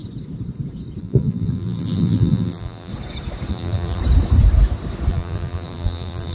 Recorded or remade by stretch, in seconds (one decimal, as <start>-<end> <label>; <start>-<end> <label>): 0.0-1.0 recorded; 1.0-2.9 remade; 2.9-3.5 recorded; 3.5-4.0 remade; 4.0-5.1 recorded; 5.1-6.3 remade